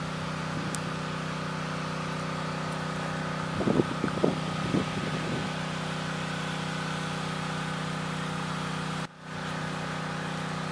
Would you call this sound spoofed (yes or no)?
no